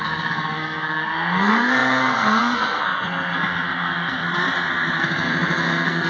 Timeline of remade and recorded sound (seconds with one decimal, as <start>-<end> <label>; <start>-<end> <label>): 0.0-4.2 remade; 4.2-5.0 recorded; 5.0-6.1 remade